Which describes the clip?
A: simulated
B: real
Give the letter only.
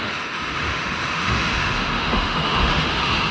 A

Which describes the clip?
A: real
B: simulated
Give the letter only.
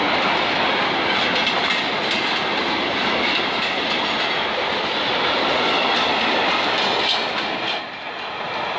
A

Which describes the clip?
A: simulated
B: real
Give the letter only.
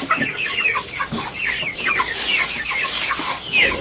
A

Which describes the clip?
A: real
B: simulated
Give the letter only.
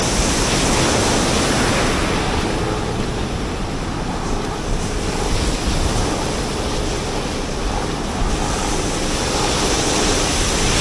A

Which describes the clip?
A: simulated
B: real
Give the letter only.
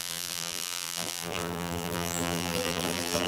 A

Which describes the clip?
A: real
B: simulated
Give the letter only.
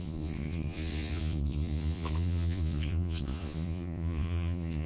B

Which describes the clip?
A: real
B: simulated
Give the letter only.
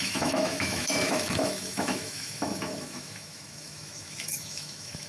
B